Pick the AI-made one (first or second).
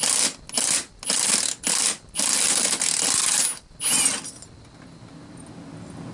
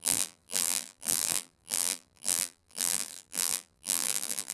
second